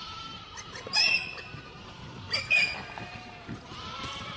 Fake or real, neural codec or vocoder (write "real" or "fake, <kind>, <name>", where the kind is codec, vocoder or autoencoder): fake, vocoder, BigVGAN v2